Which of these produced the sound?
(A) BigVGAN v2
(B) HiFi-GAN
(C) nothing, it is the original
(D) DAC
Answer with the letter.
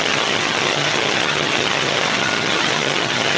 B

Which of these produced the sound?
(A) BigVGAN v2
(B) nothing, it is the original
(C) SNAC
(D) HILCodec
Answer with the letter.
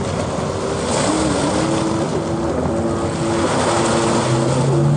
B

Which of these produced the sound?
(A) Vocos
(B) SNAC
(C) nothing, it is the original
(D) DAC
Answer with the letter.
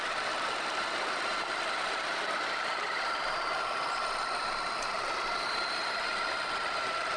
C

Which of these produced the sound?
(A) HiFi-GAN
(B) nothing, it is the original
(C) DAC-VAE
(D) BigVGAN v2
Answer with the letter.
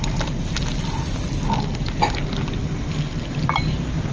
B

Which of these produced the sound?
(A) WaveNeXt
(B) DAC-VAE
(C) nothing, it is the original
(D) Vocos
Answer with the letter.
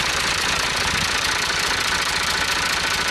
C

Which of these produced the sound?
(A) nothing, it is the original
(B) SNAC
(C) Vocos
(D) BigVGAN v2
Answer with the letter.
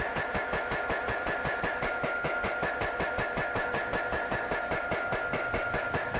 D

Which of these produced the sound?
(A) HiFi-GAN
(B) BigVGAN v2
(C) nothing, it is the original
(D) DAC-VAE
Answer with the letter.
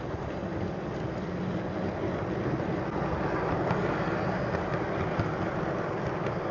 C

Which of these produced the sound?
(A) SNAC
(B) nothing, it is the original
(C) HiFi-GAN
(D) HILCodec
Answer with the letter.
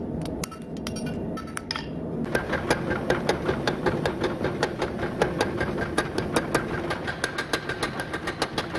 B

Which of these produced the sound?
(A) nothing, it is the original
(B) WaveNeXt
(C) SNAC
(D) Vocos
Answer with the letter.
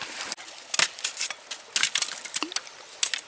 A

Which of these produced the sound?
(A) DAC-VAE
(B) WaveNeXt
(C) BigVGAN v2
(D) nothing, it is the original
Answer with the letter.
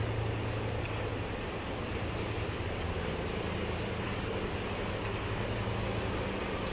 D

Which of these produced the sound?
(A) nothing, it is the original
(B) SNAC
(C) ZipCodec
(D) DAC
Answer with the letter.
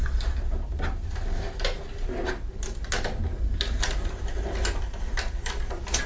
A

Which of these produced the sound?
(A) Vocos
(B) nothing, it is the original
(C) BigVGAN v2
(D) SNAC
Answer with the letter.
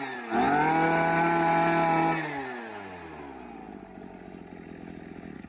B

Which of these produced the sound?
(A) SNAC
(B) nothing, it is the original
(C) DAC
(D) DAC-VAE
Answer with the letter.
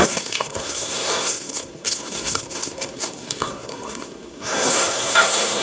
A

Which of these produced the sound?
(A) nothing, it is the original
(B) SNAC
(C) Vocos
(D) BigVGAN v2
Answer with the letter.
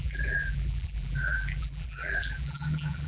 D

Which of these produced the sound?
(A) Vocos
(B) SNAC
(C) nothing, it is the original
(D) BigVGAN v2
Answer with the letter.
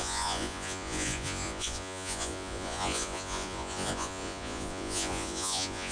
A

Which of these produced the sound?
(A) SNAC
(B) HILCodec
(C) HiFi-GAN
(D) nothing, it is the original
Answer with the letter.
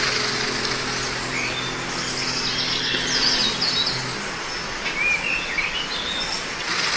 D